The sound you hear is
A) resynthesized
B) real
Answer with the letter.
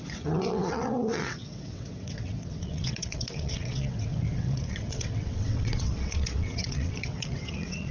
A